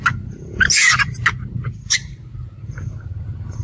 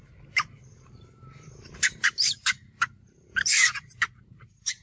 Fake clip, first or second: second